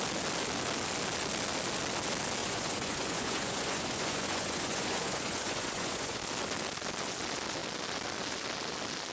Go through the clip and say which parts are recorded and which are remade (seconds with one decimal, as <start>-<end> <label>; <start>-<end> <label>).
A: 0.0-2.4 recorded; 2.4-6.2 remade; 6.2-9.1 recorded